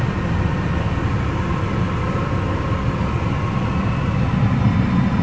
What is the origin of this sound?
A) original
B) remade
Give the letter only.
A